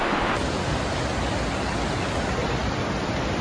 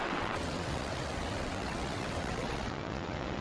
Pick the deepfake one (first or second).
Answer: second